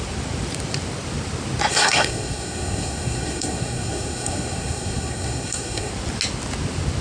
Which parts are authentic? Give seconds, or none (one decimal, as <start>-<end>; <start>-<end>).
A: 0.0-1.7; 5.9-7.0